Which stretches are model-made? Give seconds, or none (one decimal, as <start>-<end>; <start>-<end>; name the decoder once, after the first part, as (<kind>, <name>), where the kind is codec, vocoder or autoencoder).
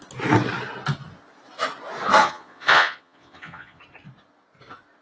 2.2-3.8 (vocoder, Vocos)